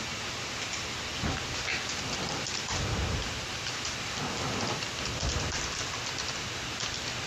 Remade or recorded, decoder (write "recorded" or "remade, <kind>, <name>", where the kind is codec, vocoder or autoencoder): recorded